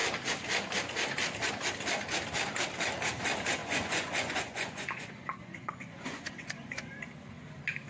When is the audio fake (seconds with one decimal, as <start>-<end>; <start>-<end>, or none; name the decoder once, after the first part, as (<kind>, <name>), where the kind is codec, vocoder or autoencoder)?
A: 3.6-7.0 (vocoder, Vocos)